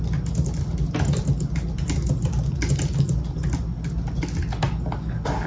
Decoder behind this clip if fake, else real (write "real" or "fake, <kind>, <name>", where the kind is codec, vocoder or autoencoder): real